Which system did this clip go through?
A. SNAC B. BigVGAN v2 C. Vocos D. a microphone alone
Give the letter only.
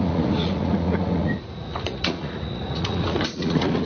C